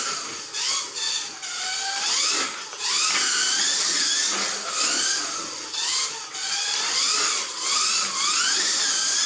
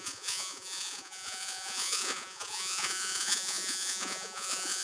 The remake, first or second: second